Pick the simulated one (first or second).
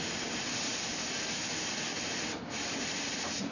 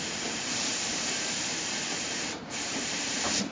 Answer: second